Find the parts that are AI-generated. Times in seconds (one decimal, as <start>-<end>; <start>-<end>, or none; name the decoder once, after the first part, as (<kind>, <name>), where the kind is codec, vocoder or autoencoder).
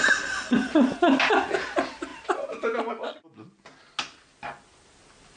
none